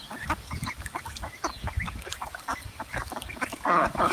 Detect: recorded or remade remade